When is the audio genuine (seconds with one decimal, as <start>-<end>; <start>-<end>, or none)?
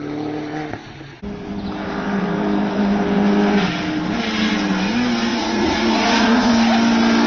0.0-5.3; 6.5-7.3